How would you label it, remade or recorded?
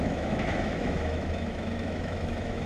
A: remade